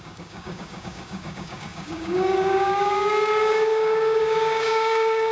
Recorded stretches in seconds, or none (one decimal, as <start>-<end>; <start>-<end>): none